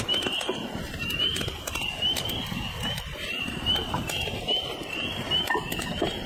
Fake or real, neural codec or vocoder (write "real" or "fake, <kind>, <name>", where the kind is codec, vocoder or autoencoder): fake, vocoder, BigVGAN v2